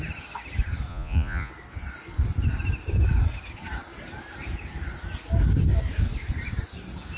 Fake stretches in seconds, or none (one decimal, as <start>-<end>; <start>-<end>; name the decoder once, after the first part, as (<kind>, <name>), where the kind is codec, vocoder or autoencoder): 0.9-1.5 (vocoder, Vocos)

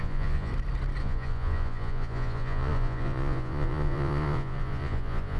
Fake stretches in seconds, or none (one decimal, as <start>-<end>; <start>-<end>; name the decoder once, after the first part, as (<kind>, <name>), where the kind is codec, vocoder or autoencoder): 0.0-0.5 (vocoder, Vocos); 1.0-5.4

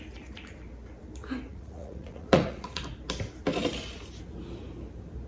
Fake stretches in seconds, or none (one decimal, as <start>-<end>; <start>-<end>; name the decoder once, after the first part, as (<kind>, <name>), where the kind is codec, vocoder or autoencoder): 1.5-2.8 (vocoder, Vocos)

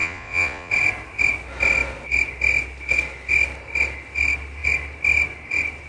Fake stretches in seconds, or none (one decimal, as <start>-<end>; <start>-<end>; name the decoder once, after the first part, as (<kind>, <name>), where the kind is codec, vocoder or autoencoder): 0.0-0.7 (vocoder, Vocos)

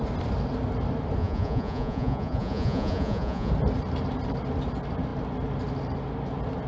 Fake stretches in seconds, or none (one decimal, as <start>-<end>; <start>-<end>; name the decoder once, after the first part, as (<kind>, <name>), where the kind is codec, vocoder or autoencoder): 1.2-3.5 (vocoder, Vocos)